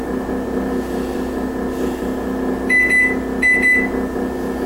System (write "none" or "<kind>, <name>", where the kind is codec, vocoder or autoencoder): none